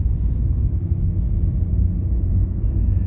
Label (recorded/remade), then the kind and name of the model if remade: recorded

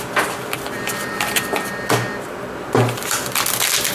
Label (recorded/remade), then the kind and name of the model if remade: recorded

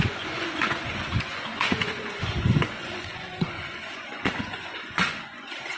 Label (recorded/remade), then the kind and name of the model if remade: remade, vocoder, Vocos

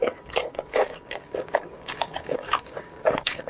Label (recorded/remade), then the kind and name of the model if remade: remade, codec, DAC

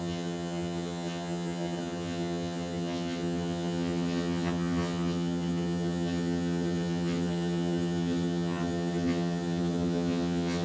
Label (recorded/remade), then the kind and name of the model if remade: remade, vocoder, HiFi-GAN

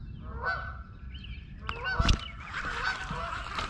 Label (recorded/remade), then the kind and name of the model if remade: recorded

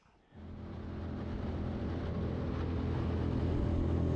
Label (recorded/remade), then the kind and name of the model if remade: recorded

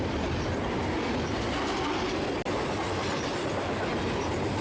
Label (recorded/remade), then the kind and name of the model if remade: recorded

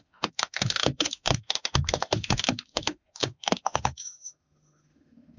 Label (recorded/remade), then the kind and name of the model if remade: remade, autoencoder, DAC-VAE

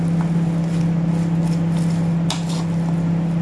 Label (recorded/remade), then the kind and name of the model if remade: recorded